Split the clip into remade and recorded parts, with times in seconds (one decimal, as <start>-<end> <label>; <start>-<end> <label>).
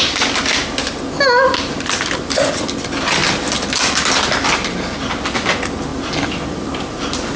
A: 0.0-7.4 recorded